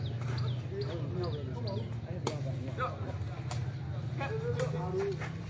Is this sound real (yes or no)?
yes